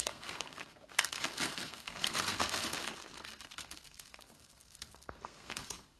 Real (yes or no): no